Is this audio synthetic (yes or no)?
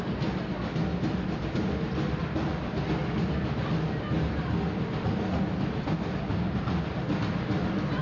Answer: no